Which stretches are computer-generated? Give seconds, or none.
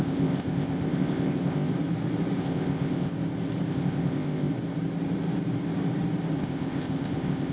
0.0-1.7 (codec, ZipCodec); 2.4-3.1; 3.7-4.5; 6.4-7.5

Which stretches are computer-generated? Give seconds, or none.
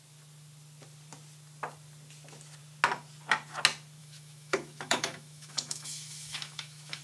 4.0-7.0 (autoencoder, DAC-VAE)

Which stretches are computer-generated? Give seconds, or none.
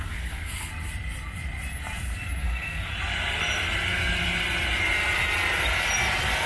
0.0-0.7 (codec, SNAC); 2.4-2.9